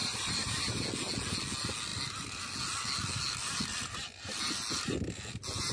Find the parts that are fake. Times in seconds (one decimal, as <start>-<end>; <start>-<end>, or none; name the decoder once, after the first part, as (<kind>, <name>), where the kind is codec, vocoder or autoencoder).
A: 0.0-0.8 (vocoder, BigVGAN v2)

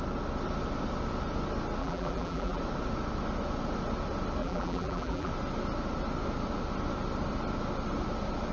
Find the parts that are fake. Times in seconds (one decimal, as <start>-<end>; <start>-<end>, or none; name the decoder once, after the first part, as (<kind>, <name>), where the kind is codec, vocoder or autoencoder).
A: 1.8-2.6 (vocoder, BigVGAN v2); 4.4-5.3

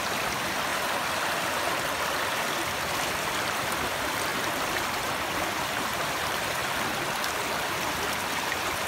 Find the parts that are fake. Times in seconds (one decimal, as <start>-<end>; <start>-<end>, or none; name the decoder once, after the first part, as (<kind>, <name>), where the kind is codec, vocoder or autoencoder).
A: 0.0-4.3 (vocoder, BigVGAN v2); 5.3-6.6; 8.3-8.9

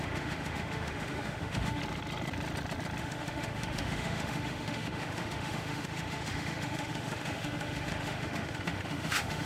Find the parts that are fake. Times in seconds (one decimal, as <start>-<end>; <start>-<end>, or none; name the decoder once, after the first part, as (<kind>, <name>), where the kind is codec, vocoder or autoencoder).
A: 0.0-1.8 (autoencoder, DAC-VAE); 3.0-9.5

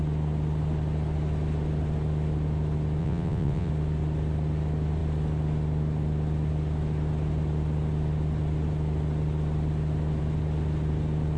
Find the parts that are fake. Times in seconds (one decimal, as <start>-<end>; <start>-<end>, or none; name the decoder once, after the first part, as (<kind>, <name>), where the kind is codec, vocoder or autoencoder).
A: 3.0-3.7 (vocoder, WaveNeXt)

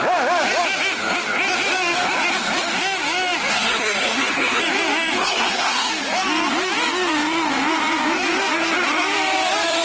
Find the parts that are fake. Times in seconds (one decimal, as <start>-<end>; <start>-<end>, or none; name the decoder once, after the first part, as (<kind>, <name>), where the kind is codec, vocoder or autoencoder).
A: 3.5-4.6 (codec, SNAC); 5.2-5.9

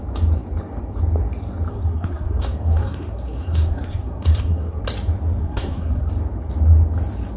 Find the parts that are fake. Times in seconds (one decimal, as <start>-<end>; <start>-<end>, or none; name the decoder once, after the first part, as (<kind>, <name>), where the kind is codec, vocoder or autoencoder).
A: 1.7-4.8 (codec, SNAC); 5.4-6.1